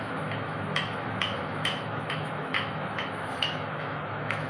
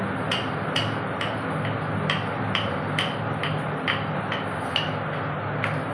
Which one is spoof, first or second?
first